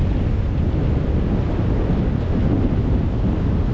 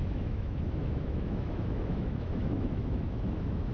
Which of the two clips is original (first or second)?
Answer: first